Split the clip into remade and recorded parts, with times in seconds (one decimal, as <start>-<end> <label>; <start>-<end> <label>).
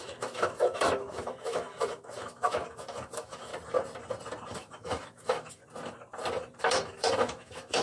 0.0-3.5 remade; 3.5-4.5 recorded; 4.5-5.6 remade; 5.6-6.6 recorded; 6.6-7.8 remade